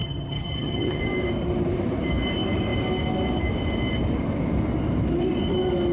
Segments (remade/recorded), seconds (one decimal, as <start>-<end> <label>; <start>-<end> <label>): 0.0-1.0 remade; 1.0-5.9 recorded